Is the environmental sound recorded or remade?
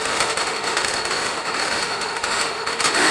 remade